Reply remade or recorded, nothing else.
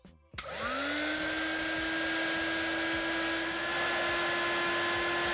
recorded